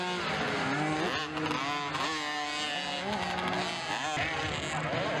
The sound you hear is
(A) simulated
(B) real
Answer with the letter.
B